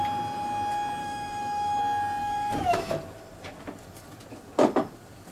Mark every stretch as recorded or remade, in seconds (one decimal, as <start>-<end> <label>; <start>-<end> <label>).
0.0-1.0 recorded; 1.0-1.8 remade; 1.8-2.2 recorded; 2.2-2.9 remade; 2.9-5.3 recorded